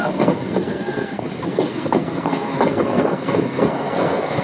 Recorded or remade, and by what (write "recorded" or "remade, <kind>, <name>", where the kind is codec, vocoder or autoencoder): remade, codec, SNAC